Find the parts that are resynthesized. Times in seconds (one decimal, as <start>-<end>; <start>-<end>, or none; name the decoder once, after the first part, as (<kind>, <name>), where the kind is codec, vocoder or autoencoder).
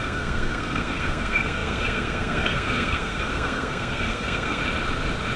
0.0-4.6 (codec, SNAC)